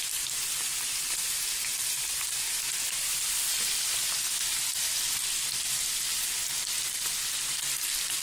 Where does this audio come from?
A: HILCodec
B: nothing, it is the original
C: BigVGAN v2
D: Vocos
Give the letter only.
B